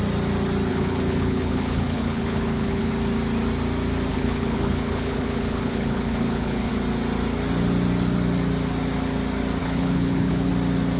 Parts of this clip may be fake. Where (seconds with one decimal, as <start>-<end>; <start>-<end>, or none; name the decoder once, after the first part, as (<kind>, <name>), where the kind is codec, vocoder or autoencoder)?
0.7-2.9 (codec, HILCodec); 4.1-6.7; 9.6-10.5